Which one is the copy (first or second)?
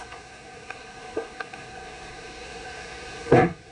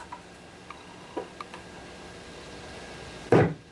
first